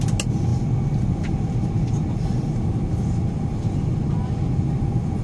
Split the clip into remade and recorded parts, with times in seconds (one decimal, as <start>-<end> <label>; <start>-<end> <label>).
0.0-5.2 recorded